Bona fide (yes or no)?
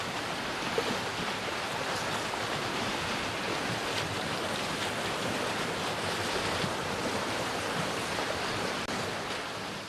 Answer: yes